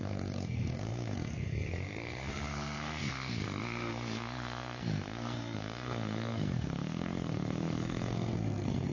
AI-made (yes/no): yes